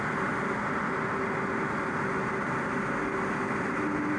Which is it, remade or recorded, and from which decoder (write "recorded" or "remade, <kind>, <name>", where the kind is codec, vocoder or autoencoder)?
recorded